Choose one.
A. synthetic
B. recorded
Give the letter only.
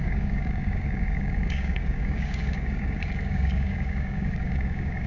A